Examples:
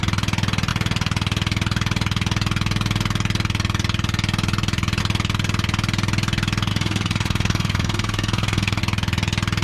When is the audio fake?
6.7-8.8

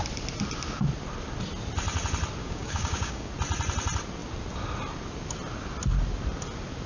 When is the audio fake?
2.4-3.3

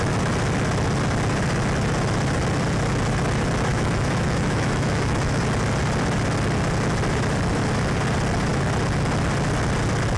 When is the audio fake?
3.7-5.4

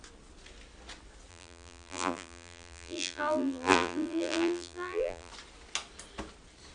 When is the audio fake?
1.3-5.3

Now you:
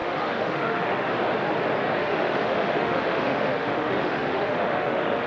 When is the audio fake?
0.0-1.1; 2.0-5.3

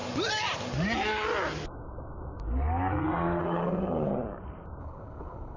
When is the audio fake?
3.4-4.1; 4.8-5.6

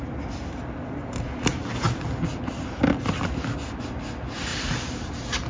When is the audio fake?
none

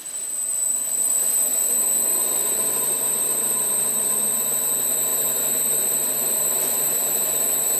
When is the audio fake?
0.0-7.8